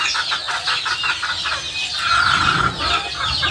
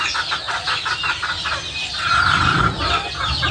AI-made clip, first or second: second